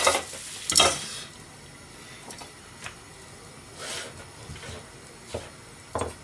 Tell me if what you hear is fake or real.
real